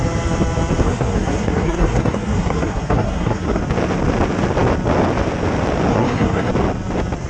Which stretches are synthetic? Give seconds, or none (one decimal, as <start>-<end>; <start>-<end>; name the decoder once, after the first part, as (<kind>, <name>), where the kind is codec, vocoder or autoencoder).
0.8-3.6 (codec, SNAC); 5.9-6.5